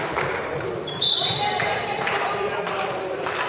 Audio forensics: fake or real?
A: fake